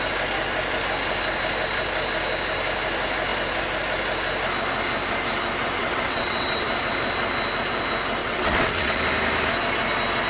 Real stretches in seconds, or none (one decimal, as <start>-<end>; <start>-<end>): 0.0-5.8; 6.7-8.2; 9.0-10.3